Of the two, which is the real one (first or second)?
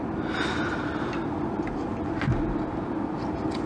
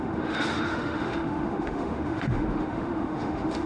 first